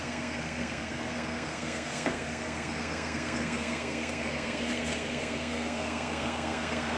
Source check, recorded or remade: remade